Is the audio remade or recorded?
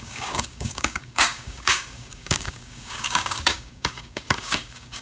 remade